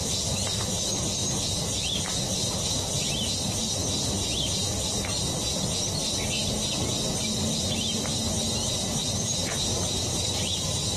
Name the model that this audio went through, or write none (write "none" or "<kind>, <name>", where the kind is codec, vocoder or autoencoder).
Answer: none